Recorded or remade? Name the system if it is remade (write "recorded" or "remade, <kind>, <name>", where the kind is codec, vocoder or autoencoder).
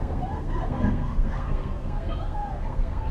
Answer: remade, codec, SNAC